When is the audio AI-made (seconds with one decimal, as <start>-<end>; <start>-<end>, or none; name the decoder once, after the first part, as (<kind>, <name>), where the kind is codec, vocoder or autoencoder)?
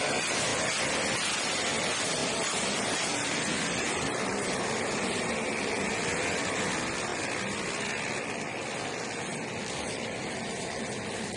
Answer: 2.2-5.0 (vocoder, BigVGAN v2); 7.1-7.6; 9.3-10.4